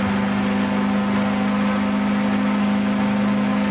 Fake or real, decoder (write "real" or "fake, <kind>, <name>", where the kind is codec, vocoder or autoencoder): real